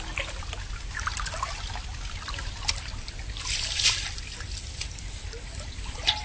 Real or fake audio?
real